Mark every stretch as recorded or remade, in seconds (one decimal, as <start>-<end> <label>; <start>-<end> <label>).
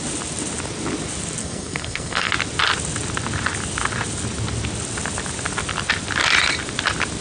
0.0-1.4 recorded; 1.4-2.3 remade; 2.3-7.2 recorded